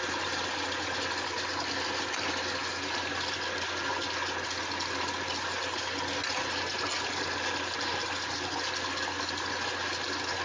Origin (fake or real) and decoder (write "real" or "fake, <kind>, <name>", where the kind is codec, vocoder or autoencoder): real